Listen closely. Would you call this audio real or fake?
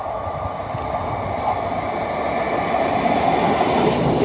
real